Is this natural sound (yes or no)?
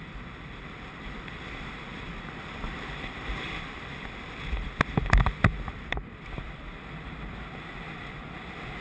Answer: no